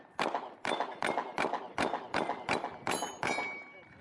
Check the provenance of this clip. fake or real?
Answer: fake